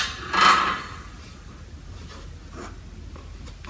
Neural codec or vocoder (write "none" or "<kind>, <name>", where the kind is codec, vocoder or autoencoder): none